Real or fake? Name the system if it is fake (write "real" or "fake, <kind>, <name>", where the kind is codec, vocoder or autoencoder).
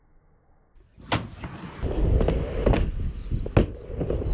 real